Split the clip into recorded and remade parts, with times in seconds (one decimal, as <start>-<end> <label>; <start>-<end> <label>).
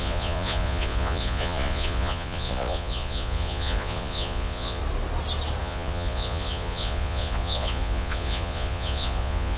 0.0-4.8 remade; 4.8-5.6 recorded; 5.6-9.6 remade